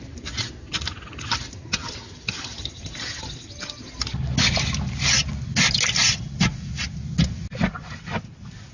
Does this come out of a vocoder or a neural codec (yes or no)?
no